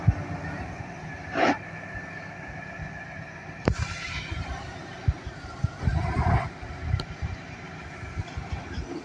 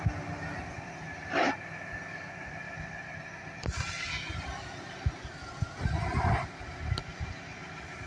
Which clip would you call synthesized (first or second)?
first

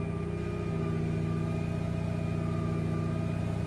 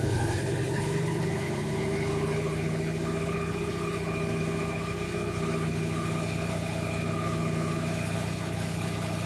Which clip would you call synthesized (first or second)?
second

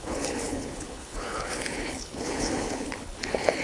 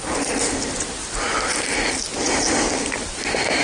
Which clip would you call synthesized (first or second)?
first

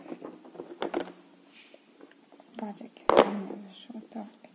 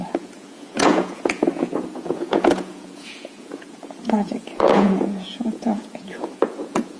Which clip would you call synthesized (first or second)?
second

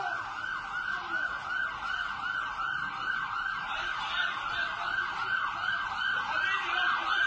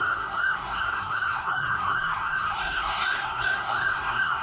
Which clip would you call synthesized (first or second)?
second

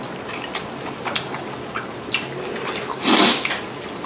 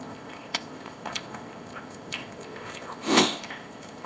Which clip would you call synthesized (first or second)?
second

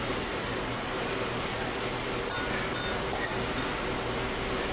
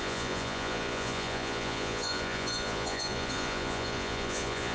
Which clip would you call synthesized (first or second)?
second